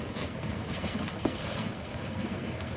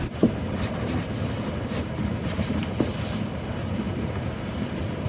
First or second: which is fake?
first